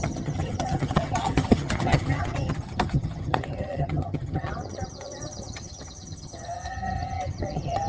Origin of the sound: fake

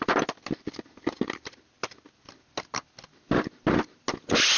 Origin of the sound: real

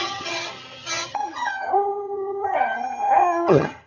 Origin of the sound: fake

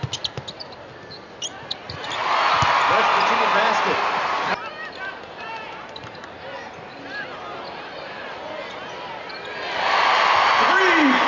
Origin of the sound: real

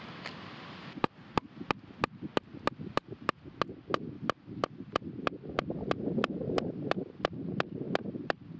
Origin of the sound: real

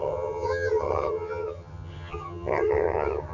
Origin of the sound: fake